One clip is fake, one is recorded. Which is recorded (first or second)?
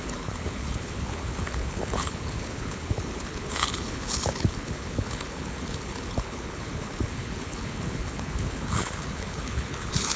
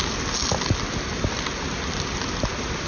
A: second